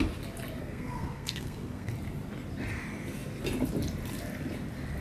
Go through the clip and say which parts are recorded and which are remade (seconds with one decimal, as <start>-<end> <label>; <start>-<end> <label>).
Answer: 0.0-0.6 recorded; 0.6-1.9 remade; 1.9-5.0 recorded